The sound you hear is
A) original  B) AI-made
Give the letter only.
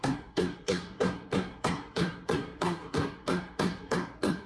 B